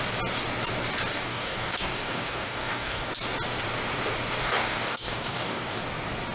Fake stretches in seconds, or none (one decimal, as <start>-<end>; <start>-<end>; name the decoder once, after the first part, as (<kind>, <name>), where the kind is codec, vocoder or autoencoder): 1.1-3.1 (codec, DAC); 4.4-5.8